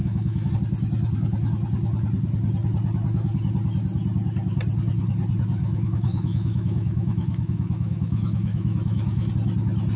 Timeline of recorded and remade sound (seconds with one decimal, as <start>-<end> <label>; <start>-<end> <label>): 0.0-0.5 remade; 0.5-5.6 recorded; 5.6-9.3 remade; 9.3-10.0 recorded